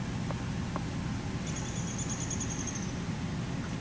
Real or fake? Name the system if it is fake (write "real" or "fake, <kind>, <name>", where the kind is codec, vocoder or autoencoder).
real